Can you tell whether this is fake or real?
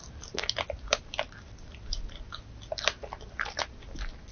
real